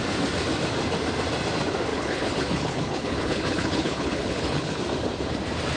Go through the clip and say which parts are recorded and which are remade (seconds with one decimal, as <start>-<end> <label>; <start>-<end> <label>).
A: 0.0-1.9 recorded; 1.9-4.8 remade; 4.8-5.8 recorded